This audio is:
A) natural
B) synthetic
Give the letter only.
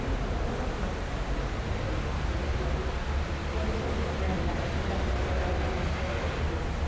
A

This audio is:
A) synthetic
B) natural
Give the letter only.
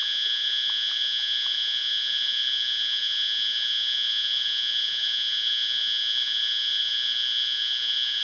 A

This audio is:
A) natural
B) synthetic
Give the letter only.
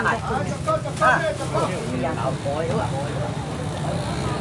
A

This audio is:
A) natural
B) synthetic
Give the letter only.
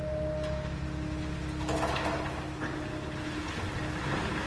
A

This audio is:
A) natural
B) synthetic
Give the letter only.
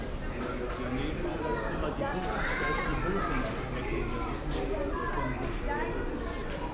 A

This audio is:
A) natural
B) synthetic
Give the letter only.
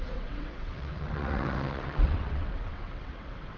B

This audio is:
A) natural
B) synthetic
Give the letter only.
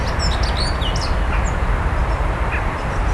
A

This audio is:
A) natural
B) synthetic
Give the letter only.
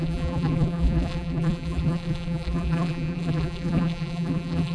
B